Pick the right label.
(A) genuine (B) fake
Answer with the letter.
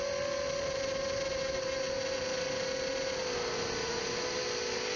A